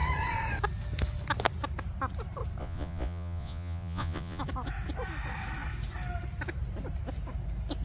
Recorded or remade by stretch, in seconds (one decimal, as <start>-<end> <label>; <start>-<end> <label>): 0.0-2.6 recorded; 2.6-4.4 remade; 4.4-7.8 recorded